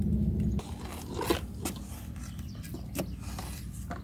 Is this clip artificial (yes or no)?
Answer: no